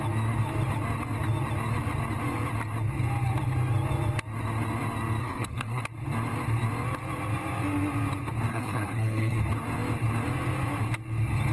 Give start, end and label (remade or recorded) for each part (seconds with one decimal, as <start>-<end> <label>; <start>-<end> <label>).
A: 0.0-5.2 recorded; 5.2-5.8 remade; 5.8-8.5 recorded; 8.5-9.4 remade; 9.4-11.5 recorded